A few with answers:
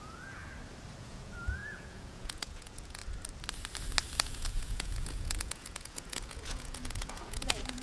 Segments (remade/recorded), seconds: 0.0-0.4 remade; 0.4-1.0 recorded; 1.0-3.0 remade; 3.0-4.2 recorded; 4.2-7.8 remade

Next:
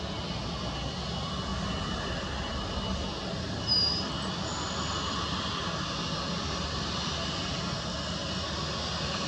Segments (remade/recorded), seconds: 0.0-9.3 recorded

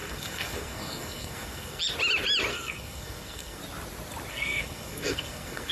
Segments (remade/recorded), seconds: 0.0-1.8 remade; 1.8-2.5 recorded; 2.5-3.6 remade; 3.6-4.3 recorded; 4.3-5.7 remade

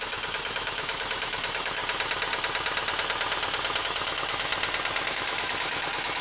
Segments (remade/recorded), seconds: 0.0-1.8 remade; 1.8-3.8 recorded; 3.8-4.5 remade; 4.5-5.1 recorded; 5.1-6.2 remade

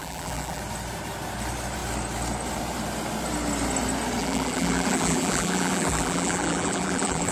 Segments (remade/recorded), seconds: 0.0-0.6 remade; 0.6-4.2 recorded; 4.2-7.3 remade

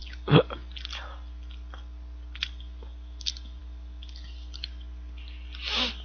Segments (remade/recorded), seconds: 0.0-6.0 recorded

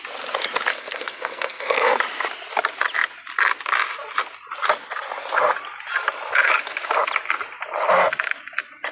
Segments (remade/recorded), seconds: 0.0-0.7 recorded; 0.7-2.0 remade; 2.0-8.9 recorded